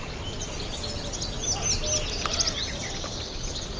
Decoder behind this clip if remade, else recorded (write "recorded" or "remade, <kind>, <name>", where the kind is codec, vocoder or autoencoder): recorded